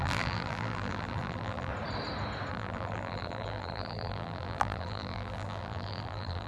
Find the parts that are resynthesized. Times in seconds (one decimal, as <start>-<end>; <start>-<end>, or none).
0.0-1.7; 2.5-6.5